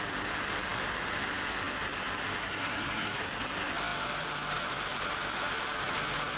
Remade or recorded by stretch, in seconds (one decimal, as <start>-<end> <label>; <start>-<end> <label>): 0.0-2.4 recorded; 2.4-3.2 remade; 3.2-6.4 recorded